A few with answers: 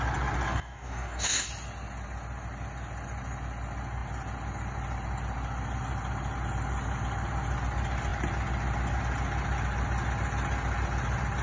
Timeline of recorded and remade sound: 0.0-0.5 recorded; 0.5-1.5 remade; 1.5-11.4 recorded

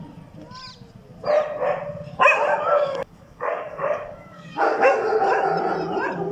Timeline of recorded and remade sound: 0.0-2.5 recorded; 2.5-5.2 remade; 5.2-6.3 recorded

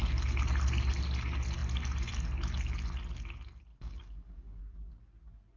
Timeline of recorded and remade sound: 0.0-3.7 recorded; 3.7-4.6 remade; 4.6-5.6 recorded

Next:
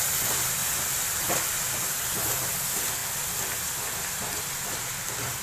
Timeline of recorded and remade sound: 0.0-5.4 recorded